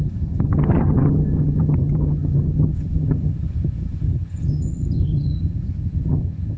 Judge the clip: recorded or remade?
remade